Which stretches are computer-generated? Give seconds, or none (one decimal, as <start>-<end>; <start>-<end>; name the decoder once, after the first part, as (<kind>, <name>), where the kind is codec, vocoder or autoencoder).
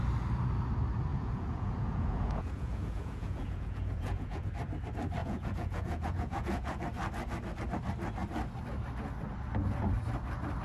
1.1-4.5 (vocoder, Vocos); 5.2-6.8